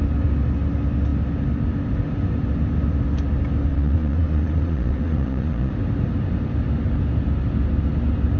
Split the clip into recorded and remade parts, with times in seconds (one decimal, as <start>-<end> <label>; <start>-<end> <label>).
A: 0.0-3.7 recorded; 3.7-5.7 remade; 5.7-8.4 recorded